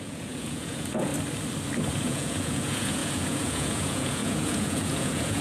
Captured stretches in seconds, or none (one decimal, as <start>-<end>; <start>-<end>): 1.1-1.9